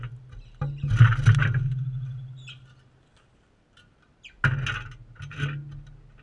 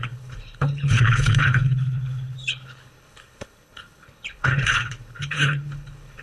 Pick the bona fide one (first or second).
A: first